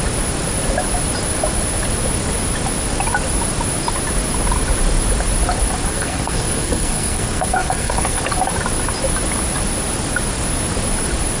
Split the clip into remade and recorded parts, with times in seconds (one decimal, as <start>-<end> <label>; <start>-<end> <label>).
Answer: 0.0-5.9 recorded; 5.9-8.2 remade; 8.2-11.4 recorded

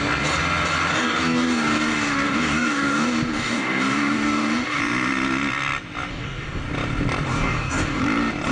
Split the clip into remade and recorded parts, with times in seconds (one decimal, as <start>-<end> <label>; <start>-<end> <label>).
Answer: 0.0-0.9 recorded; 0.9-4.8 remade; 4.8-6.1 recorded; 6.1-6.6 remade; 6.6-7.3 recorded; 7.3-8.0 remade; 8.0-8.5 recorded

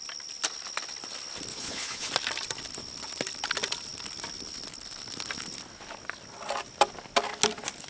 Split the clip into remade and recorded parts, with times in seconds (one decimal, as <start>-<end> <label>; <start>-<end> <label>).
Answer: 0.0-1.5 recorded; 1.5-2.1 remade; 2.1-7.9 recorded

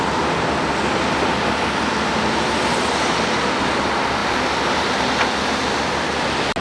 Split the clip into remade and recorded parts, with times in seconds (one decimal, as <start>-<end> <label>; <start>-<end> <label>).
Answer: 0.0-6.6 recorded

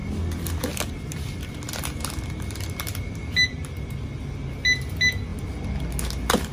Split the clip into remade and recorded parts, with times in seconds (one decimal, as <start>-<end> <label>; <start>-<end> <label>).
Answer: 0.0-3.9 remade; 3.9-5.3 recorded; 5.3-5.8 remade; 5.8-6.5 recorded

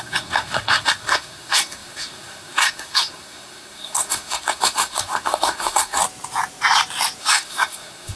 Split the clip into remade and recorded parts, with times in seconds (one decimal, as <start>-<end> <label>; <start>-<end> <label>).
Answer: 0.0-6.0 remade; 6.0-7.2 recorded; 7.2-8.2 remade